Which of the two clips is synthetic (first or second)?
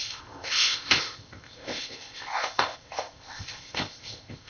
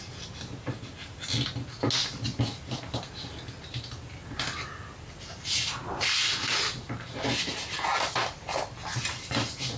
first